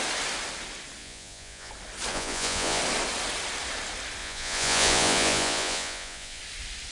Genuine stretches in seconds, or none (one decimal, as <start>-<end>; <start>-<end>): 0.0-1.0; 1.7-2.1; 2.8-4.2; 6.4-6.9